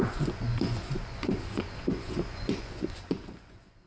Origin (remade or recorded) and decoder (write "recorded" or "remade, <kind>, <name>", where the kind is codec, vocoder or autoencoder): remade, vocoder, Vocos